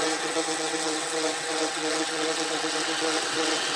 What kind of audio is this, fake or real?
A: fake